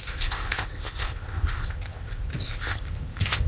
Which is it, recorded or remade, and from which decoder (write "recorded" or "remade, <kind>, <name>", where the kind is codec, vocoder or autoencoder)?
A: remade, codec, ZipCodec